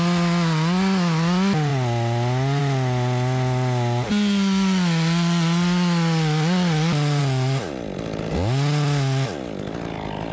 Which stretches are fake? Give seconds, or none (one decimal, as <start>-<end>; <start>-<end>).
none